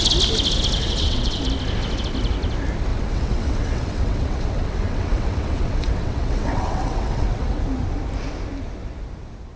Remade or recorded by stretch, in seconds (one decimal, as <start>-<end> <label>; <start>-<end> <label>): 0.0-0.8 recorded; 0.8-1.4 remade; 1.4-2.9 recorded; 2.9-7.6 remade; 7.6-9.6 recorded